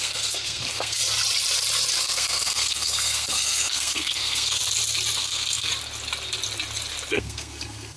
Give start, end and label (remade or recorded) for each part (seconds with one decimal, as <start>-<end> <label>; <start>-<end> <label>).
0.0-1.0 remade; 1.0-2.0 recorded; 2.0-4.6 remade; 4.6-5.2 recorded; 5.2-5.7 remade; 5.7-7.1 recorded; 7.1-8.0 remade